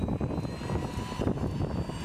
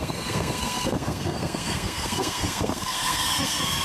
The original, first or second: first